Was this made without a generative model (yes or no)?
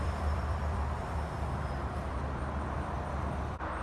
no